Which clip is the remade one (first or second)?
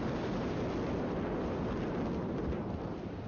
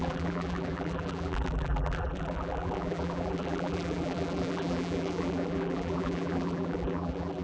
second